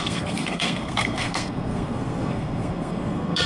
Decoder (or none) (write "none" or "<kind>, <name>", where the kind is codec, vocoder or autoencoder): codec, SNAC